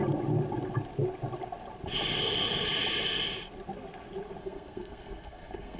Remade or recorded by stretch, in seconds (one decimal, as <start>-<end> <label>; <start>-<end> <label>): 0.0-4.4 recorded; 4.4-5.8 remade